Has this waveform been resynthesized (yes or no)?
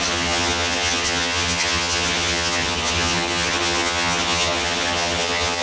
yes